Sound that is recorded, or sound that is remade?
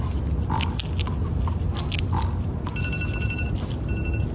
recorded